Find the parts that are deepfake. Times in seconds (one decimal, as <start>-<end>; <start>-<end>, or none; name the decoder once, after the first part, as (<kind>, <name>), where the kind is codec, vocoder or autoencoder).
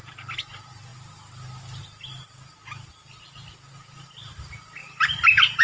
none